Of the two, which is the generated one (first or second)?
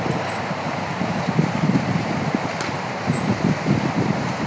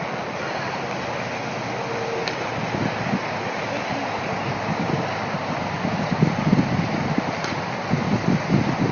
first